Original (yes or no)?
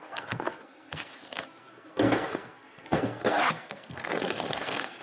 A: no